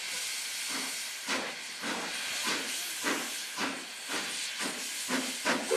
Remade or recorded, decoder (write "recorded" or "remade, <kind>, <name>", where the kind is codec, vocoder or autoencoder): recorded